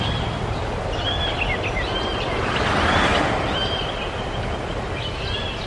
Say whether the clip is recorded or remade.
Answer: recorded